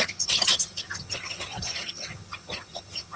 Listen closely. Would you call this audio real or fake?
fake